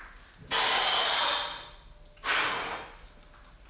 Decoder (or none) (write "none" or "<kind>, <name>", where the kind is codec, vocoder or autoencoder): none